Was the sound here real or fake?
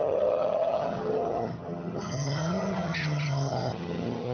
fake